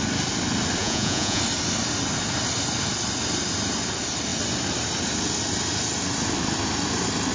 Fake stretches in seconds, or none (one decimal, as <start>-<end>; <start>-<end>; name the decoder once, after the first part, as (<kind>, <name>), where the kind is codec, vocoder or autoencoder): 0.8-1.4 (vocoder, Vocos)